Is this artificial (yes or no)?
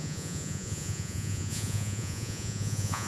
yes